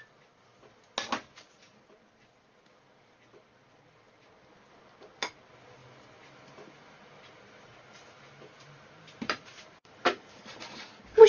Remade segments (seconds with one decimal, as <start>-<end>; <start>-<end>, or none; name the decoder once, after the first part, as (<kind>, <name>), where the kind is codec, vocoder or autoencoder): 5.8-10.6 (vocoder, BigVGAN v2)